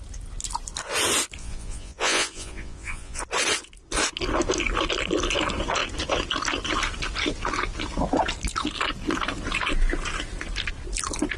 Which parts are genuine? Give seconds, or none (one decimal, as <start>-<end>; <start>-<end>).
0.0-1.4; 3.2-11.4